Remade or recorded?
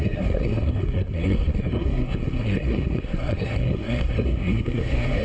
remade